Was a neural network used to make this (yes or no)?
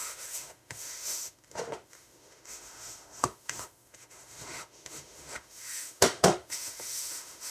yes